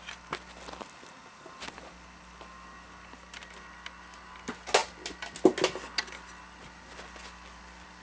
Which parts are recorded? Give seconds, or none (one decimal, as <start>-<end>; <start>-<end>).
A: 0.0-8.0